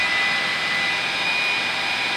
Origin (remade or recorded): recorded